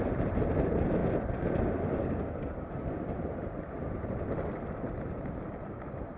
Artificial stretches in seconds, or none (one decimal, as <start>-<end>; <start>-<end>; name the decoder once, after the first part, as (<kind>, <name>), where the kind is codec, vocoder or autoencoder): 2.0-2.7 (codec, DAC)